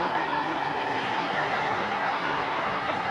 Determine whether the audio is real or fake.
fake